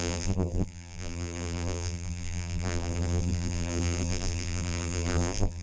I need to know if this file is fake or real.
fake